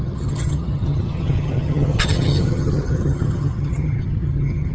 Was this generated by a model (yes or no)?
yes